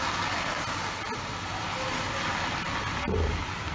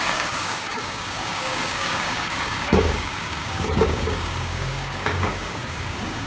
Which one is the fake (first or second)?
second